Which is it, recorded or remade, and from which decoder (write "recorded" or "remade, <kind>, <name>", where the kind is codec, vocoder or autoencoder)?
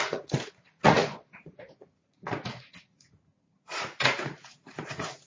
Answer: remade, vocoder, Vocos